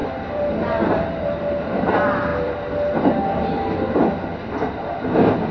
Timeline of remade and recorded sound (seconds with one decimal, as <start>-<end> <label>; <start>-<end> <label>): 0.0-1.9 remade; 1.9-2.3 recorded; 2.3-4.0 remade; 4.0-5.5 recorded